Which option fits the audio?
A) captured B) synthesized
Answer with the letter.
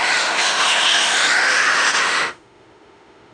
B